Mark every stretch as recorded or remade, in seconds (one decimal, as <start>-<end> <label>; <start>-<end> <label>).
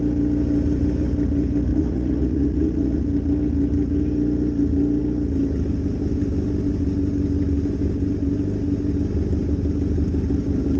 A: 0.0-1.7 recorded; 1.7-3.0 remade; 3.0-10.8 recorded